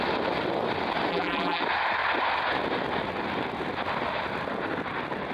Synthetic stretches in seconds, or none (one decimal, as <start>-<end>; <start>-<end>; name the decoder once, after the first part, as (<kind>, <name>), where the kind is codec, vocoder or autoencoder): 1.1-1.6 (vocoder, BigVGAN v2)